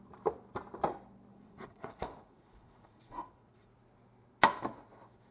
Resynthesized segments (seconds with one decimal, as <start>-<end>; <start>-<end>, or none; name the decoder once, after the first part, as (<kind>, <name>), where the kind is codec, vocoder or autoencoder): 1.3-3.7 (vocoder, Vocos)